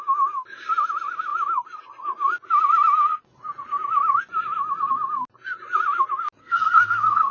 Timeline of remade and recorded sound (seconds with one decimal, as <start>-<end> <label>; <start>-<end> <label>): 0.0-6.4 recorded; 6.4-7.3 remade